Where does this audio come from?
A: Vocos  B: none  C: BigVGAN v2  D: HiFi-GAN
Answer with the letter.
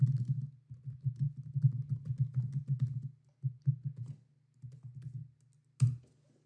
B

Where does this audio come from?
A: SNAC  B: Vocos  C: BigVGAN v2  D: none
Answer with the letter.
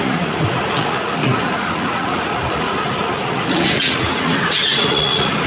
B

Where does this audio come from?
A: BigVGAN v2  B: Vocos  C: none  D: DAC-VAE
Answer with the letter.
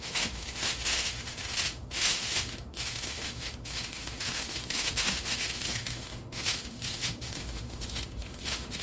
D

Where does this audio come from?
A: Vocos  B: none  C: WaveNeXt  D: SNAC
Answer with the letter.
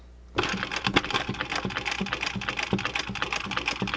B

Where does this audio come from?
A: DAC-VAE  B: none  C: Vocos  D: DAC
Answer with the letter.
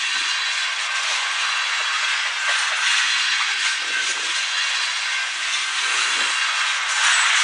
C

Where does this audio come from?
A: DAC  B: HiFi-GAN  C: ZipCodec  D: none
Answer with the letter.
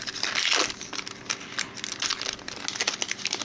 D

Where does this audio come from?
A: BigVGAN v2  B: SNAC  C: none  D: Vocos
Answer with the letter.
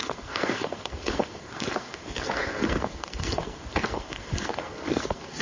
B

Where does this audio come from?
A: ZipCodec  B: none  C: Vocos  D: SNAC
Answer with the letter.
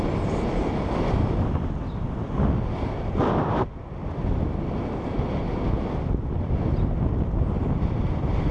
B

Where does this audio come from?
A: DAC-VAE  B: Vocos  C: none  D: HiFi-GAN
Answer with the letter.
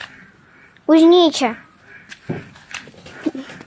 C